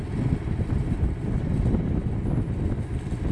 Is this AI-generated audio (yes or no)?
no